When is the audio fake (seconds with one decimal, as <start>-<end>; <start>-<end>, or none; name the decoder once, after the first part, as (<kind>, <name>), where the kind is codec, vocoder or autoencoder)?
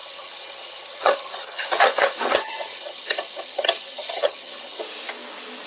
0.0-4.8 (vocoder, HiFi-GAN)